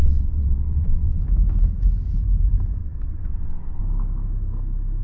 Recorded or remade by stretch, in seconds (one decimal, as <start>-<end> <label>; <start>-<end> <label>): 0.0-1.2 remade; 1.2-2.8 recorded; 2.8-3.8 remade; 3.8-5.0 recorded